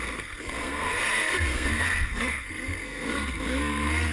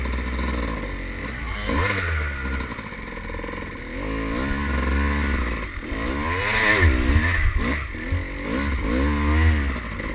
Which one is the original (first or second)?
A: second